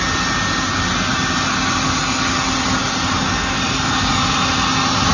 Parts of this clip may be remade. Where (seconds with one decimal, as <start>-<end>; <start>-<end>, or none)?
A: none